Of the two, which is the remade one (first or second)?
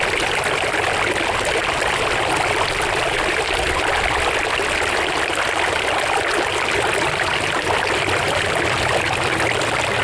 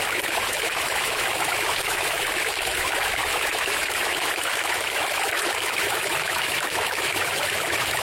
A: second